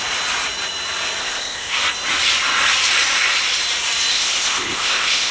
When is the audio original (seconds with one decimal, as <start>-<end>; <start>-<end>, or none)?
0.0-1.2; 1.8-4.1